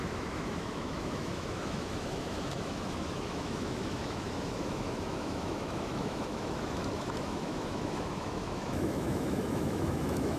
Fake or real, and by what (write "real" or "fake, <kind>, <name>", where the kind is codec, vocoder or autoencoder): fake, autoencoder, DAC-VAE